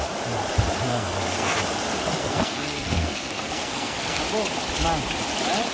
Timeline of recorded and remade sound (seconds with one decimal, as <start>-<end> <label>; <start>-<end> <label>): 0.0-0.9 recorded; 0.9-1.6 remade; 1.6-2.2 recorded; 2.2-4.2 remade; 4.2-5.7 recorded